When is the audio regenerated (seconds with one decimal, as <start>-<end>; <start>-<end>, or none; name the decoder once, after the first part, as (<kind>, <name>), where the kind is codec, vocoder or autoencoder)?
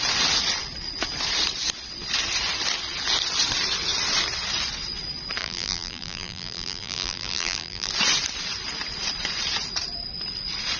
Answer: 5.4-7.9 (vocoder, BigVGAN v2)